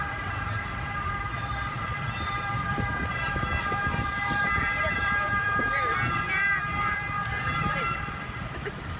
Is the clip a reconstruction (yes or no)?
yes